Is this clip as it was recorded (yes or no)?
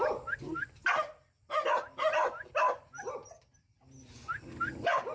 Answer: yes